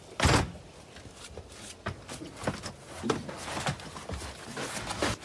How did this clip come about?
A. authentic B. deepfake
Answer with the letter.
A